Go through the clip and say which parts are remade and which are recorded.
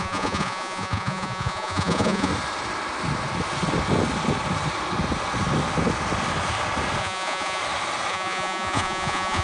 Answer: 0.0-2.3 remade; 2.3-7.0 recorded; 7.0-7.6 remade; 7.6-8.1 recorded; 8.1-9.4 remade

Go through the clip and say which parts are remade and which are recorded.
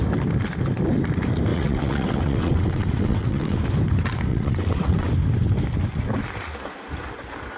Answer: 0.0-1.5 recorded; 1.5-3.6 remade; 3.6-4.3 recorded; 4.3-5.1 remade; 5.1-7.6 recorded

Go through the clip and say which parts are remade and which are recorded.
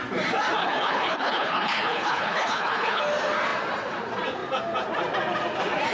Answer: 0.0-0.6 recorded; 0.6-3.0 remade; 3.0-5.9 recorded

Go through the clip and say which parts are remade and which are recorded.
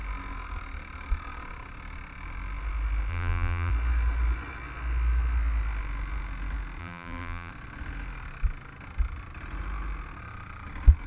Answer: 0.0-3.1 recorded; 3.1-3.7 remade; 3.7-6.8 recorded; 6.8-7.5 remade; 7.5-11.1 recorded